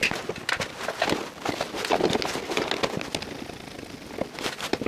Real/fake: real